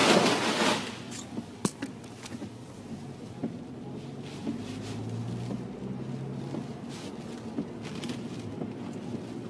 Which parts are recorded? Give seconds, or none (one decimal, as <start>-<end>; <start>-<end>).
0.0-9.5